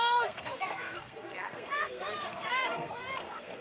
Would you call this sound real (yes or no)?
no